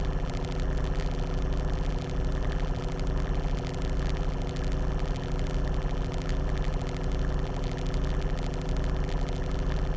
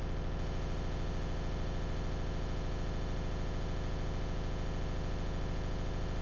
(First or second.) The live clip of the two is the second